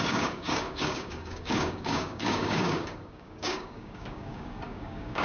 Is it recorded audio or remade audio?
remade